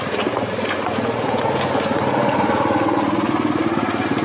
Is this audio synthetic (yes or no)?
no